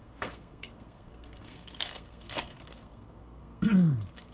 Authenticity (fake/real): fake